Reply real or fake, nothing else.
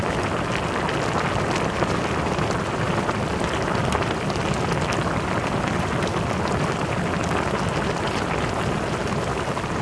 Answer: real